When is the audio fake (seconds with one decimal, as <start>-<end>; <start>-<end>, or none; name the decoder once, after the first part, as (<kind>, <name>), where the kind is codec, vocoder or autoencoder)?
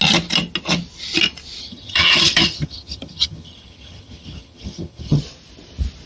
1.6-5.2 (vocoder, HiFi-GAN)